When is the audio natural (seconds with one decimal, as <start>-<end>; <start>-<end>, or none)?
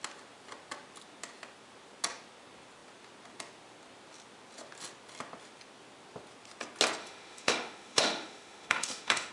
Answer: 0.0-7.0